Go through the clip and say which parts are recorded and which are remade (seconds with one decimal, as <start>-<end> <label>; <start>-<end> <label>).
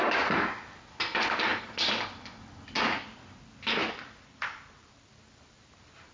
0.0-6.1 recorded